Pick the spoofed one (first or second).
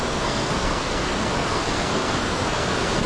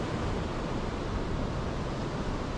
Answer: first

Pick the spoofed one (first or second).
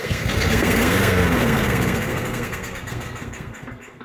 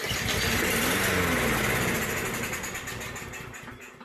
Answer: first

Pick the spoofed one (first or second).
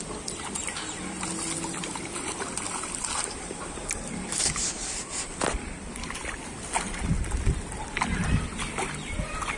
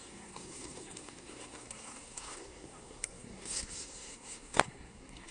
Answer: second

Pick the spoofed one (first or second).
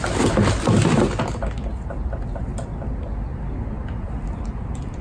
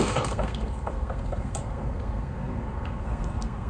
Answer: second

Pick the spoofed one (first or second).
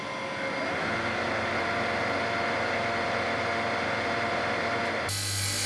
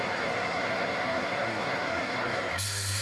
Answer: second